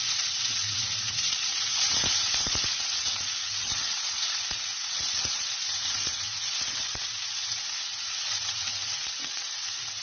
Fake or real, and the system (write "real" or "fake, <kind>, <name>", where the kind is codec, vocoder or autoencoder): fake, vocoder, WaveNeXt